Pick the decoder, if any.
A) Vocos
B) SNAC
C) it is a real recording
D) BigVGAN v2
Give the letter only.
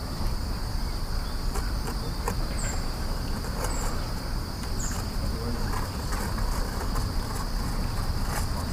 D